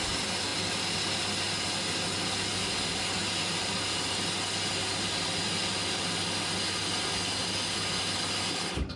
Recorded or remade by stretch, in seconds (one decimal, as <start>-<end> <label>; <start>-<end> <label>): 0.0-9.0 recorded